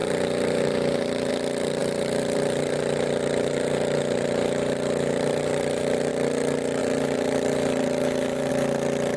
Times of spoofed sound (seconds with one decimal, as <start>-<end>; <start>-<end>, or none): 0.0-1.3; 1.8-6.1; 6.8-8.5